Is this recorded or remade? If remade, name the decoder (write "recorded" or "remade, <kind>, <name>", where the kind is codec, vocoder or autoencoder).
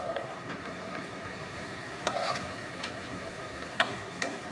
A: remade, codec, SNAC